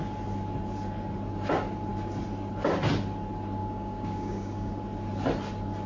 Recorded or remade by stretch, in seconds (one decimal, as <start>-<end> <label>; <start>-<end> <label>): 0.0-3.6 recorded; 3.6-4.8 remade; 4.8-5.9 recorded